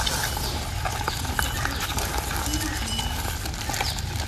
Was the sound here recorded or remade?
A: recorded